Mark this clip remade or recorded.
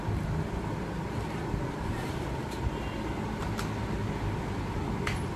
recorded